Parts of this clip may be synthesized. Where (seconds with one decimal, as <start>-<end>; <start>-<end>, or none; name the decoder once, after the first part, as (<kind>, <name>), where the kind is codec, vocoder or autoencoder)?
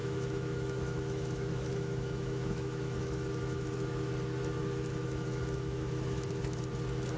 0.0-4.1 (autoencoder, DAC-VAE); 4.6-6.6